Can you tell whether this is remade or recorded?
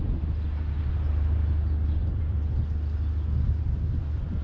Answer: recorded